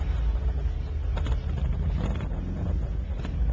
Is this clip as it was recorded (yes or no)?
yes